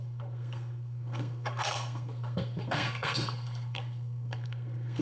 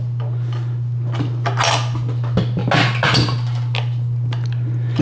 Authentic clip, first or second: second